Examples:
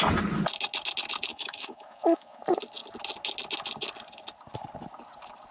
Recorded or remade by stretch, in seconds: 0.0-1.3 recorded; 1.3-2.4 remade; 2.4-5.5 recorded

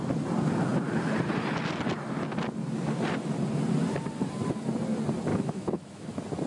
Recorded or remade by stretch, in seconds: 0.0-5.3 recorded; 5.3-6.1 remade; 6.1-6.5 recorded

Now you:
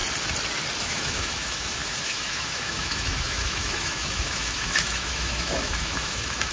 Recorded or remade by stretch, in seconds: 0.0-0.8 recorded; 0.8-6.5 remade

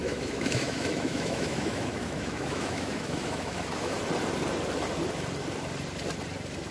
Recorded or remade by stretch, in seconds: 0.0-4.0 remade; 4.0-6.7 recorded

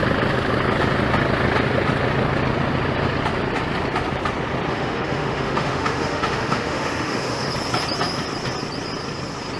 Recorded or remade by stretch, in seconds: 0.0-4.7 recorded; 4.7-7.5 remade; 7.5-9.6 recorded